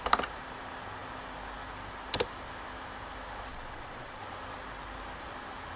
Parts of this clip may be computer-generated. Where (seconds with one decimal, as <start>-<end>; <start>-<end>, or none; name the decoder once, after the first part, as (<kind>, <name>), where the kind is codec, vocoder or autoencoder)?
3.5-4.2 (vocoder, Vocos)